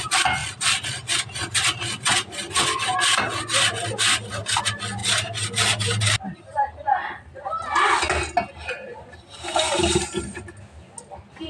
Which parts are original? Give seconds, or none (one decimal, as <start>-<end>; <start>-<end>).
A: 0.0-5.0; 6.2-8.9; 10.4-11.5